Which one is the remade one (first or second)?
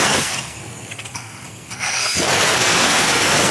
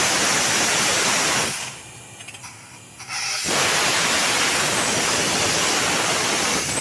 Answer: first